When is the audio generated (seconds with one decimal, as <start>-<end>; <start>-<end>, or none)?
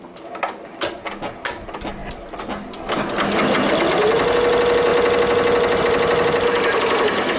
none